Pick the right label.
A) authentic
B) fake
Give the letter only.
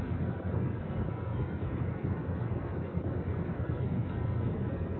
B